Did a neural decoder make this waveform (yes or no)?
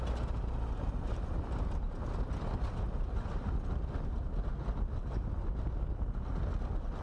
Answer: no